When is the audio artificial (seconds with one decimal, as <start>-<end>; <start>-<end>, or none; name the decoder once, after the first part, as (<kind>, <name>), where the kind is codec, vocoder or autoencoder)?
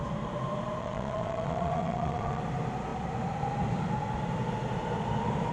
0.8-2.4 (vocoder, Vocos)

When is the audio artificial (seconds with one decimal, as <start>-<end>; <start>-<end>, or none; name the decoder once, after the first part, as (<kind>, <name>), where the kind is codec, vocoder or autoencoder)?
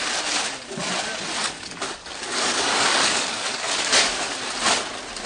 1.4-4.4 (codec, DAC)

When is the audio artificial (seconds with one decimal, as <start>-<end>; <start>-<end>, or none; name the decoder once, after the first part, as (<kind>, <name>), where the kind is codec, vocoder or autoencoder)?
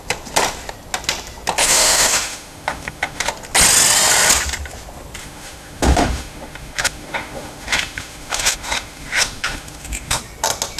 1.6-3.3 (autoencoder, DAC-VAE); 5.2-10.2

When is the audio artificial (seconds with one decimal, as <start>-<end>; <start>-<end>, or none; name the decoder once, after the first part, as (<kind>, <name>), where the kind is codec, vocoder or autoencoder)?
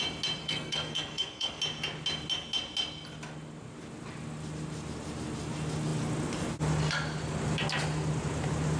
0.4-1.6 (codec, SNAC)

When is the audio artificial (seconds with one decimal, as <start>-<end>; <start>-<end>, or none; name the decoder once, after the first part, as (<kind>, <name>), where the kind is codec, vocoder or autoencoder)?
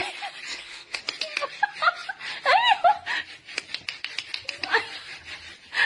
0.5-1.0 (codec, HILCodec)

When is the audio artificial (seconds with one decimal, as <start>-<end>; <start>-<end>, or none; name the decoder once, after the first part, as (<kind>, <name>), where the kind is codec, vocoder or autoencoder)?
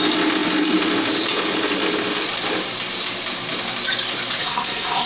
4.4-5.1 (codec, SNAC)